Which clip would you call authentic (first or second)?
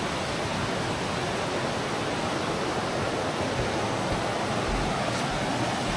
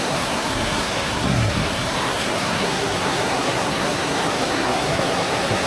first